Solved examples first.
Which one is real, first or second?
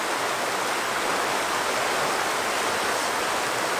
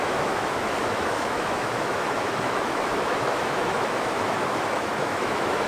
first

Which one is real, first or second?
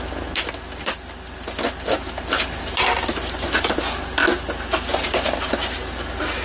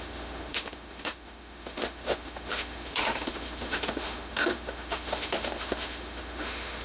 first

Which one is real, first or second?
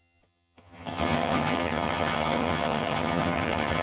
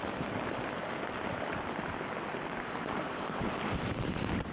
second